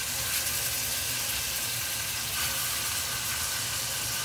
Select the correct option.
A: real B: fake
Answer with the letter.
A